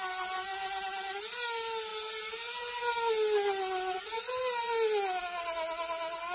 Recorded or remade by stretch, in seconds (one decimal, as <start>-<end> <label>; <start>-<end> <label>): 0.0-6.3 recorded